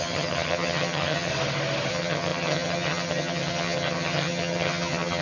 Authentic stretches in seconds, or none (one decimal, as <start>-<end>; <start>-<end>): 1.3-1.9